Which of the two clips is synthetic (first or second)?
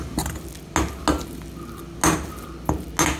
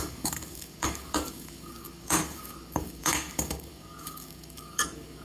second